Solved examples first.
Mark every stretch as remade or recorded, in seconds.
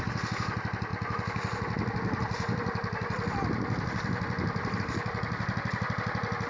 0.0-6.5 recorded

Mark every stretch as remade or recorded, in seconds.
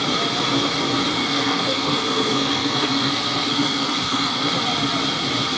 0.0-1.2 recorded; 1.2-4.5 remade; 4.5-5.6 recorded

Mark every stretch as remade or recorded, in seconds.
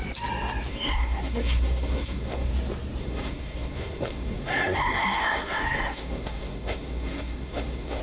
0.0-0.7 recorded; 0.7-2.5 remade; 2.5-3.0 recorded; 3.0-8.0 remade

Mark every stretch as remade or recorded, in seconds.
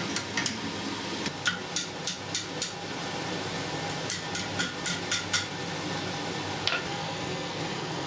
0.0-6.9 recorded; 6.9-8.1 remade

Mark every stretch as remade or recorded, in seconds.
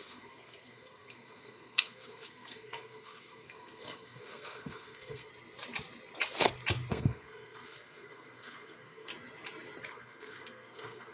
0.0-5.3 remade; 5.3-6.9 recorded; 6.9-9.1 remade; 9.1-9.9 recorded; 9.9-11.1 remade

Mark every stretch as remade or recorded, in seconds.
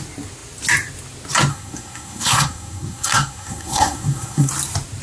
0.0-1.5 recorded; 1.5-4.5 remade; 4.5-5.0 recorded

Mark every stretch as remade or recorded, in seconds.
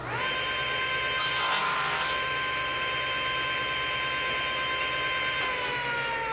0.0-6.3 recorded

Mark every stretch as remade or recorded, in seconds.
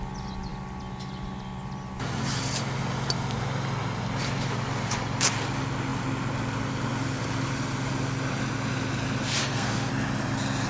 0.0-9.4 recorded; 9.4-9.9 remade; 9.9-10.7 recorded